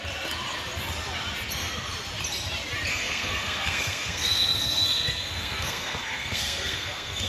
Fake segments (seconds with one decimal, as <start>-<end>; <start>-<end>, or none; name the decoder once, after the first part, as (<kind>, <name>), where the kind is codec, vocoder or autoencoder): 2.9-7.3 (codec, SNAC)